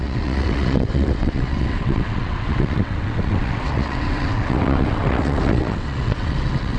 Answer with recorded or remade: remade